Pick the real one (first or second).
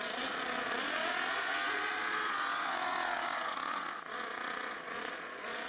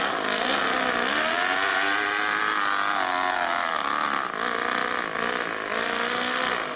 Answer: second